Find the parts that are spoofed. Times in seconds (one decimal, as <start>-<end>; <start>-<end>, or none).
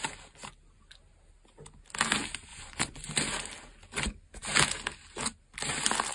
2.5-3.1